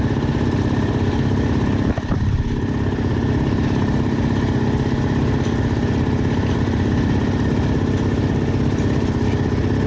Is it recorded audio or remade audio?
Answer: recorded